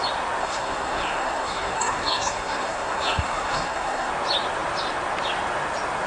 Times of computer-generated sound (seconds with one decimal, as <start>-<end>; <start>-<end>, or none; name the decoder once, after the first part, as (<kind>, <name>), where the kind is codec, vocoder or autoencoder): 0.4-4.1 (codec, SNAC)